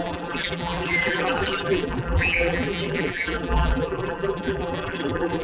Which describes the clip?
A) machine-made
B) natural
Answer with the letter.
A